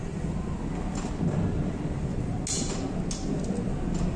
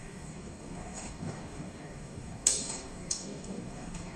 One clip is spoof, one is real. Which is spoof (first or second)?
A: second